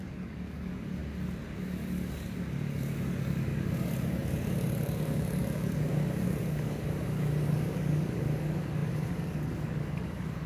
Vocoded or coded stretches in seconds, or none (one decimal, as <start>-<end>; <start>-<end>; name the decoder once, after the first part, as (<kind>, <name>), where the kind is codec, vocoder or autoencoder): 0.0-1.0 (codec, DAC); 1.6-10.5